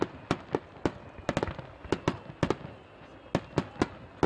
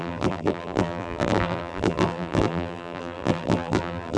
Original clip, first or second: first